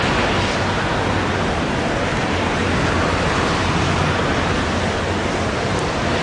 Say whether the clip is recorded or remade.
recorded